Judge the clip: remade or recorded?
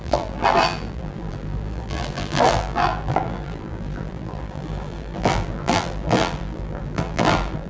remade